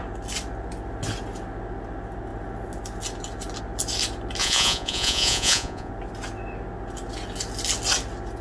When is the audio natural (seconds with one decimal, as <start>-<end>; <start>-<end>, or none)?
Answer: 0.0-4.4; 5.9-8.4